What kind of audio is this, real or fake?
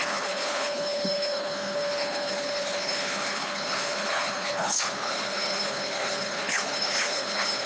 fake